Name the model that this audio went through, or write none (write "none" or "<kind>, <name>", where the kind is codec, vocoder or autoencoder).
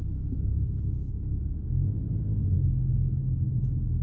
none